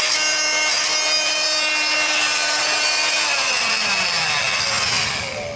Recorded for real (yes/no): yes